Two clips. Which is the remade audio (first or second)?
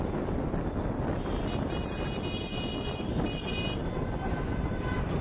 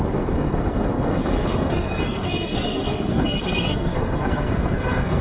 second